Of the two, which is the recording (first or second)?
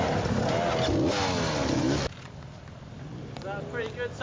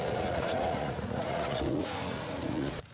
first